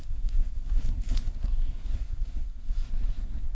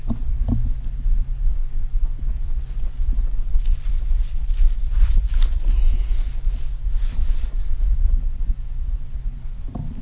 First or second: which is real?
second